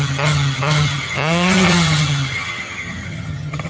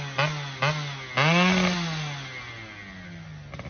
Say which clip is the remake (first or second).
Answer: first